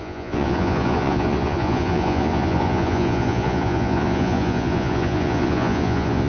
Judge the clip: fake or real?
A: fake